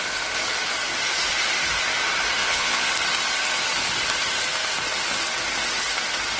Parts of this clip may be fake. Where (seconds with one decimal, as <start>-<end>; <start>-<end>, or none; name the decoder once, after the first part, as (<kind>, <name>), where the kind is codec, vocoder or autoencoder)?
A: 2.4-2.9 (vocoder, Vocos)